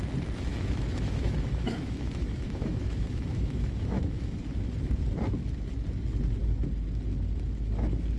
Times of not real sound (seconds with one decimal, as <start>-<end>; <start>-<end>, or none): 0.5-4.4